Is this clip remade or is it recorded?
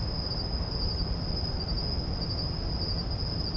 recorded